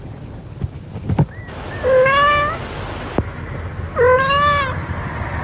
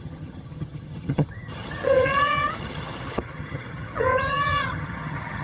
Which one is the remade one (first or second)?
second